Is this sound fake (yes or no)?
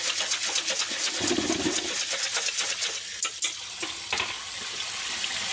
no